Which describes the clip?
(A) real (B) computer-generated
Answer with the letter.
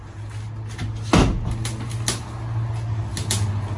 A